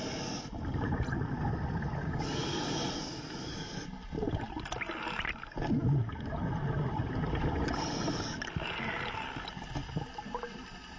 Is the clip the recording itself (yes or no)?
yes